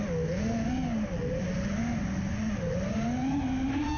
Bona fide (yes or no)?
yes